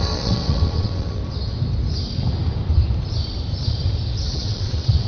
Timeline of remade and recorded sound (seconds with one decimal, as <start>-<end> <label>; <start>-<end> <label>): 0.0-1.2 remade; 1.2-4.3 recorded; 4.3-5.1 remade